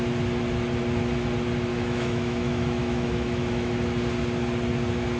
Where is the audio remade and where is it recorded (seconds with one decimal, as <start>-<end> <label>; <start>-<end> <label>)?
0.0-1.7 recorded; 1.7-3.7 remade; 3.7-5.2 recorded